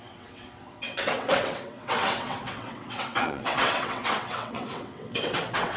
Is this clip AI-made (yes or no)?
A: yes